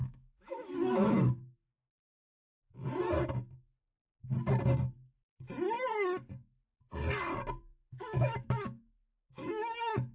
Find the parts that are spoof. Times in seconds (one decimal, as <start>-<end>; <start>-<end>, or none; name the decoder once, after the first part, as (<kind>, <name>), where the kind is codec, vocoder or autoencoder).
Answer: 0.0-2.8 (autoencoder, DAC-VAE); 7.6-10.1